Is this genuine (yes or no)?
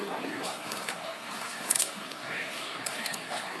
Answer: no